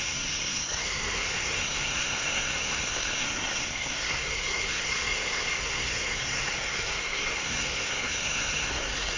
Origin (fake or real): fake